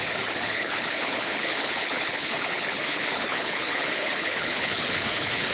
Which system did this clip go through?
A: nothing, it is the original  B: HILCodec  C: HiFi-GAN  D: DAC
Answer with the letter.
B